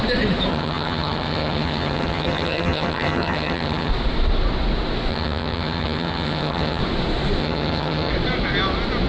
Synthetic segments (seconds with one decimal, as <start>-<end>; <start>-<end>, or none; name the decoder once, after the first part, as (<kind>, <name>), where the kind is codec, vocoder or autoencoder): 0.5-3.9 (vocoder, HiFi-GAN); 5.1-6.8; 7.4-8.1